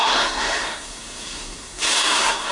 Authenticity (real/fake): fake